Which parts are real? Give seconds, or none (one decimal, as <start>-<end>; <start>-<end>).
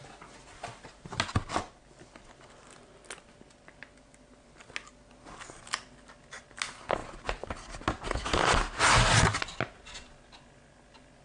0.0-11.2